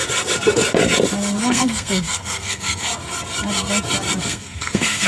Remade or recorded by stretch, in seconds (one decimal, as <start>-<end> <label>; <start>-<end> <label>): 0.0-1.4 recorded; 1.4-2.9 remade; 2.9-4.2 recorded; 4.2-5.1 remade